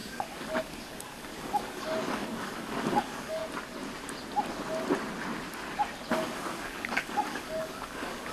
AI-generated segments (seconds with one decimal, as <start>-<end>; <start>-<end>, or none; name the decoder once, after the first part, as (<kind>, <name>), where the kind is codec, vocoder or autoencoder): 0.0-3.4 (codec, DAC); 6.1-8.3